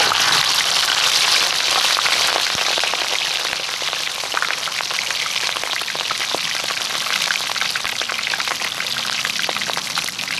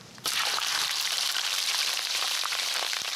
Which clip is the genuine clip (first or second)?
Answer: first